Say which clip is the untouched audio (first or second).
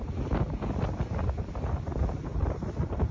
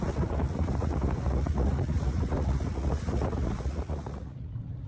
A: first